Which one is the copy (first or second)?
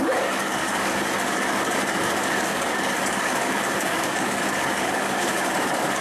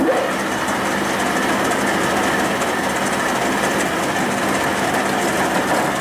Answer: first